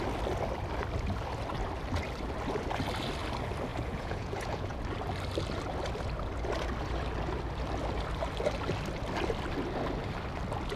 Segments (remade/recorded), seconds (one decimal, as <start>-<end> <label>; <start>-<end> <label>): 0.0-3.7 recorded; 3.7-4.8 remade; 4.8-10.8 recorded